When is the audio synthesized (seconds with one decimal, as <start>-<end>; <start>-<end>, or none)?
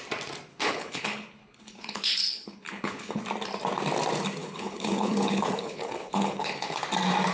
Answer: 0.5-3.2; 4.4-6.8